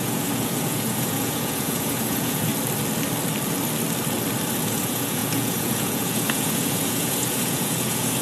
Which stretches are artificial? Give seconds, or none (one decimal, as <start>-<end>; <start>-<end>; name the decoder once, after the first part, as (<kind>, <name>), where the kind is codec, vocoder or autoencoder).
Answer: 0.0-2.5 (vocoder, Vocos); 4.6-8.2